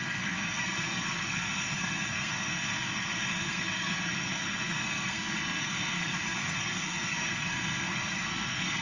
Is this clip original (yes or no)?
no